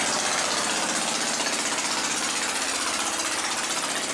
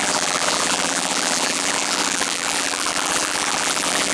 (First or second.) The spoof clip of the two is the second